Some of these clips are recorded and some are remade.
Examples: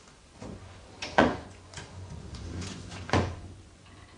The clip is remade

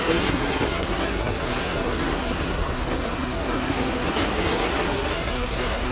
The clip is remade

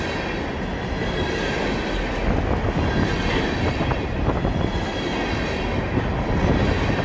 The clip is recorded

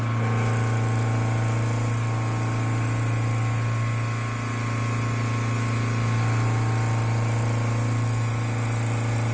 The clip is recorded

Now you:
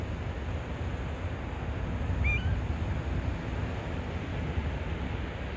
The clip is recorded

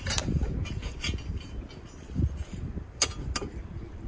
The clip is recorded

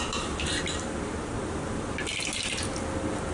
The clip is recorded